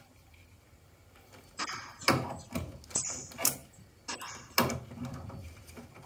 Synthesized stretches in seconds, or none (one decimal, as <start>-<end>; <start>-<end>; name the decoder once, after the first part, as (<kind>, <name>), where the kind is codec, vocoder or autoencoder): none